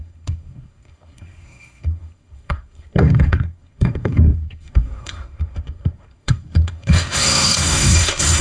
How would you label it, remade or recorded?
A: remade